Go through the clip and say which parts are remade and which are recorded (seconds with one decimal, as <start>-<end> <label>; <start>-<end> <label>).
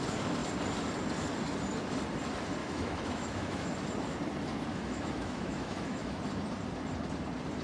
0.0-2.6 recorded; 2.6-3.7 remade; 3.7-4.7 recorded; 4.7-6.2 remade; 6.2-7.6 recorded